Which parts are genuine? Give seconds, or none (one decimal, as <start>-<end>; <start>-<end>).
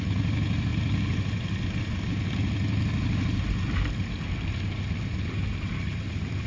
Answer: 0.0-6.5